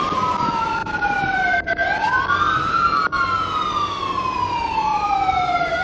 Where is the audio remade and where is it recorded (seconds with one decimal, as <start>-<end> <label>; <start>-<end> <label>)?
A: 0.0-0.8 recorded; 0.8-2.1 remade; 2.1-5.8 recorded